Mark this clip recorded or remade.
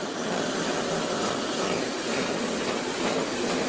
recorded